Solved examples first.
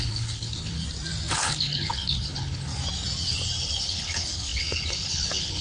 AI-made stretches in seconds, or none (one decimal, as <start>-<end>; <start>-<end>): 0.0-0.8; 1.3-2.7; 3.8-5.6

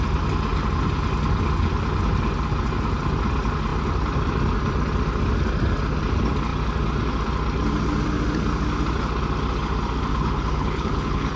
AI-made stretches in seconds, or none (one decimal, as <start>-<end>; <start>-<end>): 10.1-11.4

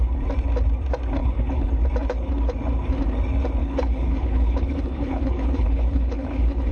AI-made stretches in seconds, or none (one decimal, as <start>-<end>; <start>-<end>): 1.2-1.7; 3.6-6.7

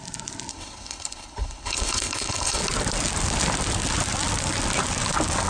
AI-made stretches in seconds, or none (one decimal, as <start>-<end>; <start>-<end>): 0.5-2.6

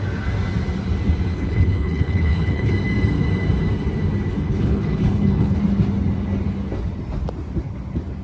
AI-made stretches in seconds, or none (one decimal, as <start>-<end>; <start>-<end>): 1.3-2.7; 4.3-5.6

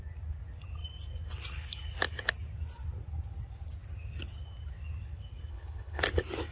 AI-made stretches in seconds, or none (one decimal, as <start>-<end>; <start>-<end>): 5.5-6.0